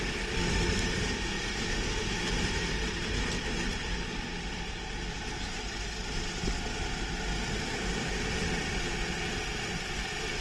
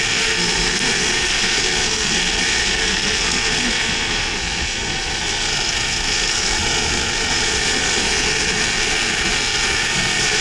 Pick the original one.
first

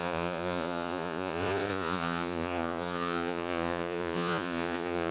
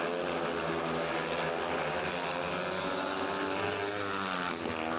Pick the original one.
second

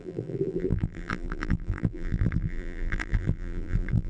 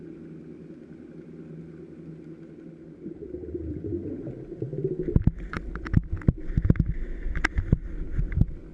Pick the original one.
second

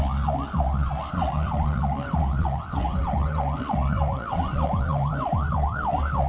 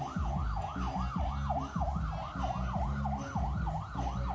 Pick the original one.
second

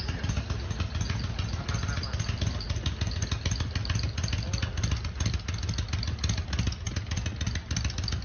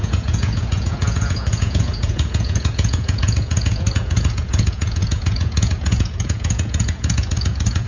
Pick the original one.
first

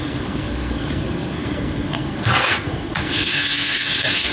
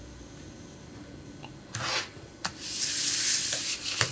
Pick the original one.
second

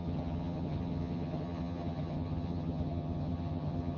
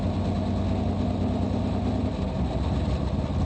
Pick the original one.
second